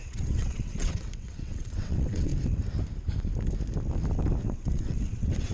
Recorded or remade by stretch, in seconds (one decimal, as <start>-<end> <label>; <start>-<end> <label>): 0.0-2.3 remade; 2.3-4.4 recorded; 4.4-5.5 remade

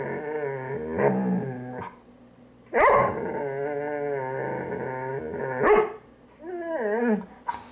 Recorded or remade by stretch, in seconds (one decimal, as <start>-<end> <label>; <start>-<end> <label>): 0.0-7.7 recorded

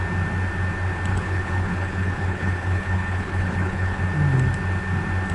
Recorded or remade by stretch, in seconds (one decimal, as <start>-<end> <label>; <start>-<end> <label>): 0.0-1.1 recorded; 1.1-4.0 remade; 4.0-5.3 recorded

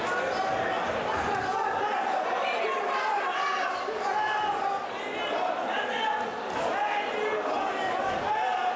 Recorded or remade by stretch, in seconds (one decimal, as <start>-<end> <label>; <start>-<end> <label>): 0.0-8.8 recorded

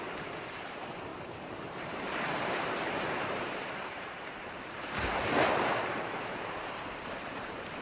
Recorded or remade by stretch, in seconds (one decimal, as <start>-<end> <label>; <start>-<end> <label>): 0.0-7.8 remade

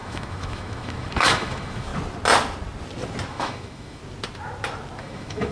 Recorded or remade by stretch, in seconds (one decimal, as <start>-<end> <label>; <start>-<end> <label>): 0.0-1.9 remade; 1.9-3.3 recorded; 3.3-4.0 remade; 4.0-5.0 recorded; 5.0-5.5 remade